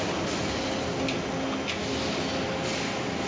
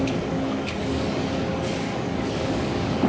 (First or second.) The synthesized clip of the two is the second